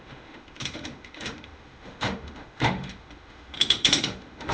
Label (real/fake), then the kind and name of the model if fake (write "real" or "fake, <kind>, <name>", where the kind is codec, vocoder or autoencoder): fake, autoencoder, DAC-VAE